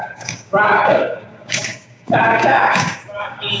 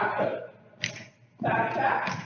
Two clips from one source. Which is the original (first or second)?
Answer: second